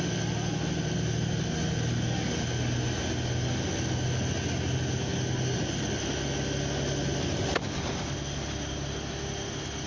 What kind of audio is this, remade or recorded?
recorded